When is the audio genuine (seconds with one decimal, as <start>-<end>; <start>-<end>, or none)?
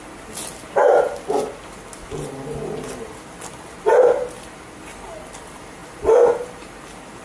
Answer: 0.0-7.2